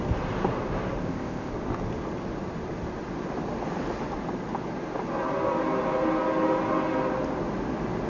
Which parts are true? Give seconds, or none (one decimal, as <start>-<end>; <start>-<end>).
0.0-1.0; 1.5-8.1